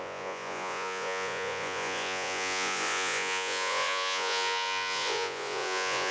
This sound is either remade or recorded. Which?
remade